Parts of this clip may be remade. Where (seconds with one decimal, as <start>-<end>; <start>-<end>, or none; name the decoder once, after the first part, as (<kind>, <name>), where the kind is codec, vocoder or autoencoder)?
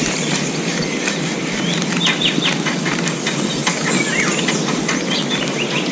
none